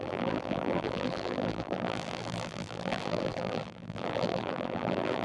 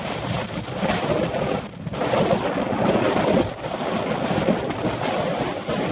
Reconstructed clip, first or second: first